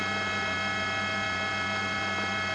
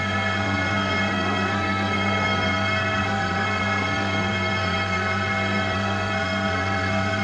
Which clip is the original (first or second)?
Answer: first